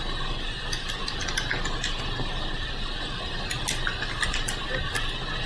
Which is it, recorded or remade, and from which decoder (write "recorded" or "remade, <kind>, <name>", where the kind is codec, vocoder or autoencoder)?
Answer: recorded